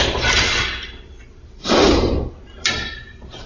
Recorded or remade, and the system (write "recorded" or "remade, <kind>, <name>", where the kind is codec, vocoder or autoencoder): remade, vocoder, BigVGAN v2